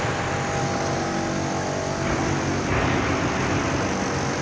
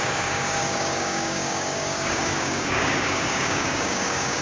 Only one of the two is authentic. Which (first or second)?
first